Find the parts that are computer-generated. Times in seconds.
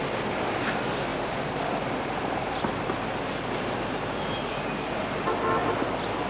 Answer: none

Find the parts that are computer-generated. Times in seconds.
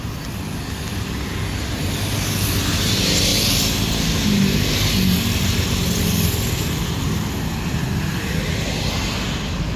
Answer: none